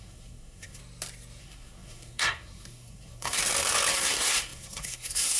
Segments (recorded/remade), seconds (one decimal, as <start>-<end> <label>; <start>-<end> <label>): 0.0-0.8 remade; 0.8-1.4 recorded; 1.4-3.4 remade; 3.4-3.9 recorded; 3.9-5.4 remade